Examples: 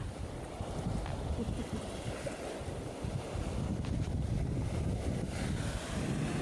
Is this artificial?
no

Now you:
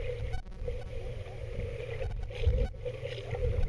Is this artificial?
no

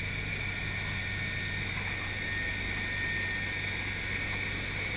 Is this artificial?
no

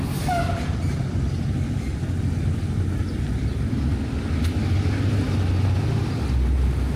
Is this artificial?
no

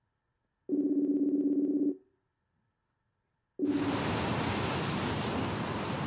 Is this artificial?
no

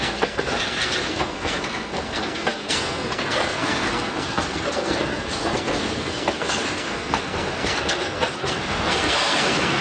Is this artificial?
yes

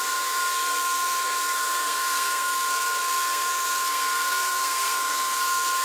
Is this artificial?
yes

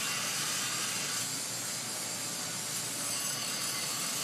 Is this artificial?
no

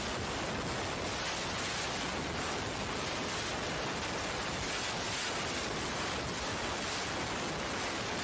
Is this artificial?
no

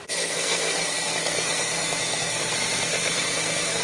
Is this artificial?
yes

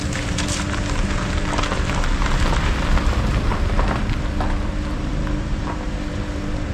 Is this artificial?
no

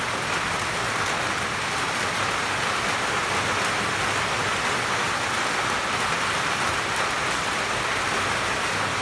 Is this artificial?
no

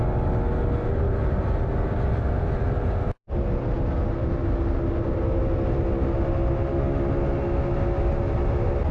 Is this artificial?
no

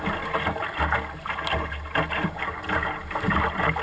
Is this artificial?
no